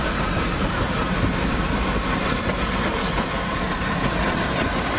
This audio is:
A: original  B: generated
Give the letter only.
B